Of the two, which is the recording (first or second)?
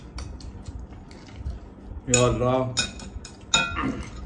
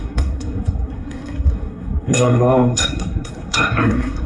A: first